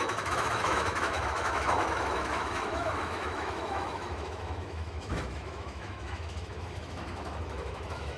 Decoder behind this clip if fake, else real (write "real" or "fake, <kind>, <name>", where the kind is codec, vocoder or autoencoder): fake, autoencoder, DAC-VAE